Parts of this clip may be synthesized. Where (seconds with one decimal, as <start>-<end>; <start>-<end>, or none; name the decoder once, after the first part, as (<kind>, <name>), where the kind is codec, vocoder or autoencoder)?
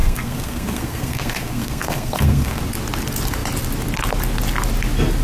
0.0-2.6 (codec, SNAC)